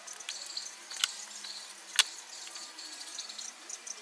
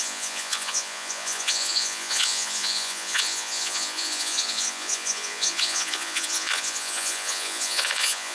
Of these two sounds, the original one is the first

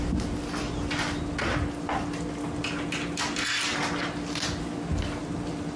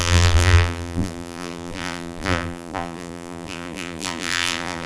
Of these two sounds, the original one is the first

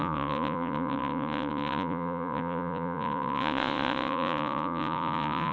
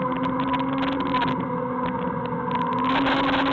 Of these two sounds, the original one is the second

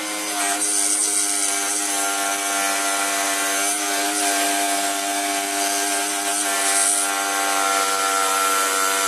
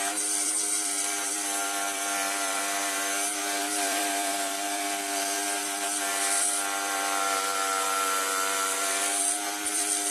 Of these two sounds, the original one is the first